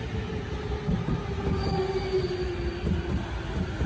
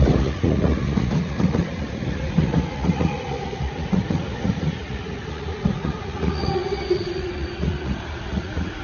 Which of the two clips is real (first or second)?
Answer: first